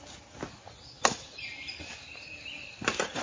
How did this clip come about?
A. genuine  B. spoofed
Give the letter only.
A